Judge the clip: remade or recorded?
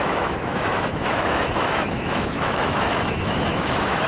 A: remade